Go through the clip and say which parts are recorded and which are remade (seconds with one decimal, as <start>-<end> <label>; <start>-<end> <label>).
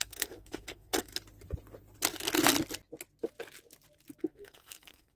0.0-1.1 remade; 1.1-4.2 recorded; 4.2-5.2 remade